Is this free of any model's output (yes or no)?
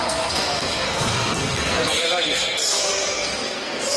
no